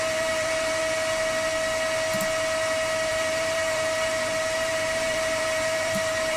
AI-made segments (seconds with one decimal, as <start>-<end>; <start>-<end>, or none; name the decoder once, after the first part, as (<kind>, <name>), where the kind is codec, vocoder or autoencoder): 0.0-0.8 (vocoder, BigVGAN v2); 3.1-6.4